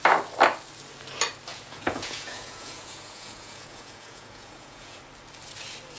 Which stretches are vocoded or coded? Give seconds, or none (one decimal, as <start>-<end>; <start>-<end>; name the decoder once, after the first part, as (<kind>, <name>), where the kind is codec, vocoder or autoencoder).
1.5-5.0 (vocoder, Vocos)